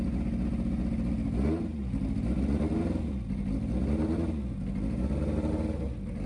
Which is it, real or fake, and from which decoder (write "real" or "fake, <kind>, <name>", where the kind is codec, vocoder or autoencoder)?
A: real